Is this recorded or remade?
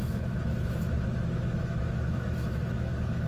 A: remade